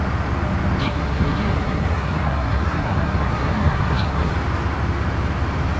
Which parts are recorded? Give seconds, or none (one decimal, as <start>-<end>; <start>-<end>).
0.0-0.8; 4.3-5.8